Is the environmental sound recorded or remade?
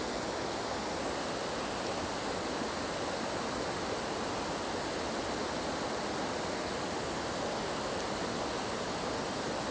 recorded